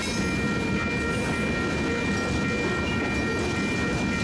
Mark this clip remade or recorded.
recorded